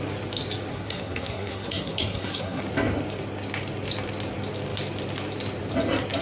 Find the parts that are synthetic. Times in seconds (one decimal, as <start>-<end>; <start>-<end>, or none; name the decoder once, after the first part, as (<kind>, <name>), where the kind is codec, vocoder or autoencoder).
0.7-2.6 (codec, SNAC)